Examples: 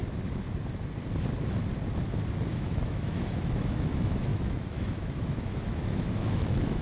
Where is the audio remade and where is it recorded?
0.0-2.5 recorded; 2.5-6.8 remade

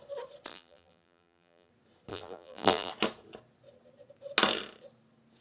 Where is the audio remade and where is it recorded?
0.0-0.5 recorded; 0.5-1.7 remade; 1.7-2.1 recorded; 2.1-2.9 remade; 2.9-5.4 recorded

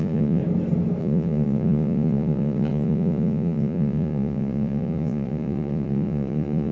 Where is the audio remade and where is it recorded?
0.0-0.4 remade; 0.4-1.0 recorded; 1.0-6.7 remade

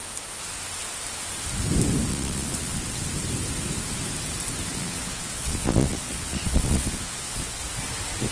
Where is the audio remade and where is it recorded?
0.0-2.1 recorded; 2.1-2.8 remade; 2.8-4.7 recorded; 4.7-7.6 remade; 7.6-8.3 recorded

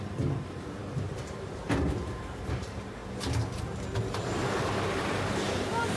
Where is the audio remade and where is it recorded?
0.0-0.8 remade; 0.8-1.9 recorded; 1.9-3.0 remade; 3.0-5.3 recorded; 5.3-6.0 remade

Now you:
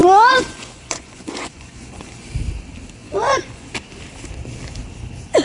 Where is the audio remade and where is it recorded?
0.0-2.3 remade; 2.3-3.0 recorded; 3.0-3.7 remade; 3.7-5.4 recorded

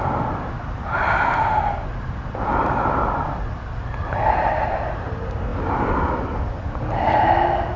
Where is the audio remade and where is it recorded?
0.0-7.8 recorded